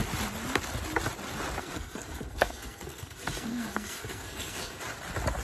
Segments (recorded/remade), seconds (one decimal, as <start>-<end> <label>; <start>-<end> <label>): 0.0-1.6 recorded; 1.6-4.8 remade; 4.8-5.4 recorded